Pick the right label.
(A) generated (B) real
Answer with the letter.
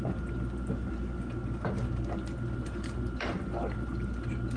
B